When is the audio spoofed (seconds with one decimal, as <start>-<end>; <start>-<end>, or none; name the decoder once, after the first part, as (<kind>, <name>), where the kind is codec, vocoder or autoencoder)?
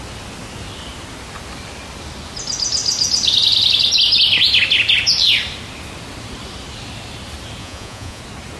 7.6-8.2 (vocoder, Vocos)